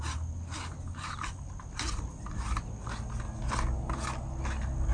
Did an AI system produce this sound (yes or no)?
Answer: no